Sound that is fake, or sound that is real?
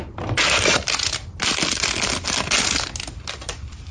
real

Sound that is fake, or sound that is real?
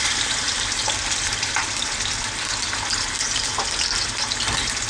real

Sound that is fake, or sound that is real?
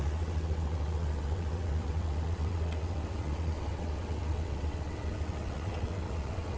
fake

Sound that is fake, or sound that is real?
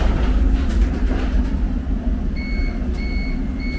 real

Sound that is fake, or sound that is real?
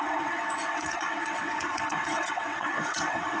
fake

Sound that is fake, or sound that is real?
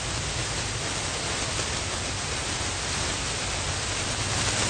real